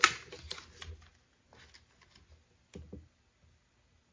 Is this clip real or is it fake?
real